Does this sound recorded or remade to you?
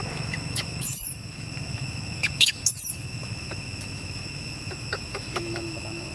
remade